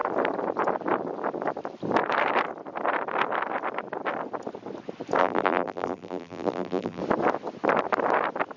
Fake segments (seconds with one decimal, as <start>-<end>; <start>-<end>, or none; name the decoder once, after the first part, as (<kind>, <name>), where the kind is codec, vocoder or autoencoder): 5.2-7.0 (vocoder, BigVGAN v2)

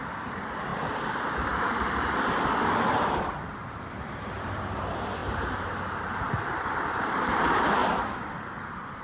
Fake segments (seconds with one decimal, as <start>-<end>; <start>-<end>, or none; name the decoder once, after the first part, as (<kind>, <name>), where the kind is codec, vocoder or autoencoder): 0.0-5.2 (vocoder, BigVGAN v2); 6.0-7.8; 8.3-9.0

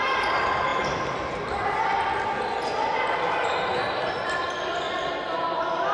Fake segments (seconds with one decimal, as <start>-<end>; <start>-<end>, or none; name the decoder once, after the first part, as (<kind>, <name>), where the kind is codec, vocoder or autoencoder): none